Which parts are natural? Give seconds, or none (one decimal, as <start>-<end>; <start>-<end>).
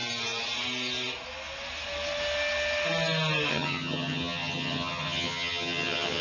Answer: 0.0-3.5